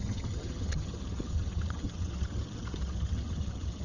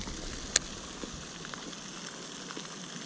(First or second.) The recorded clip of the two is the second